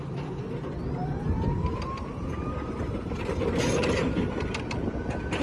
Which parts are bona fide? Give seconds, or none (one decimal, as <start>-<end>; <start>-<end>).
0.0-5.4